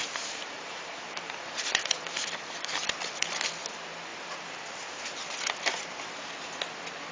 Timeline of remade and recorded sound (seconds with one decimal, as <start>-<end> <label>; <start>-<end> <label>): 0.0-3.4 remade; 3.4-4.1 recorded; 4.1-6.3 remade; 6.3-7.1 recorded